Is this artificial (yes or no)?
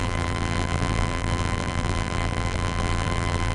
yes